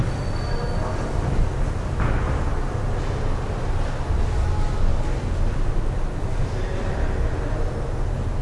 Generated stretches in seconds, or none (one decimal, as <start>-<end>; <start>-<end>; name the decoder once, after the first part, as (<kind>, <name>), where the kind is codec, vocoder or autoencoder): none